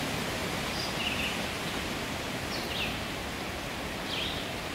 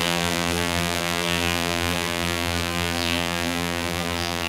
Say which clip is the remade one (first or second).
second